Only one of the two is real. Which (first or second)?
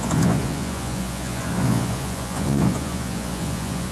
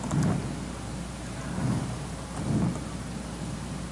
second